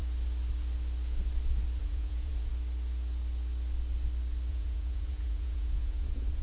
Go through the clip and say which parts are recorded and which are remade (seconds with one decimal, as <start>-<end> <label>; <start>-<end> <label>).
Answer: 0.0-1.8 recorded; 1.8-2.5 remade; 2.5-4.5 recorded; 4.5-6.4 remade